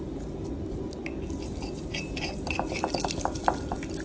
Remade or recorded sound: recorded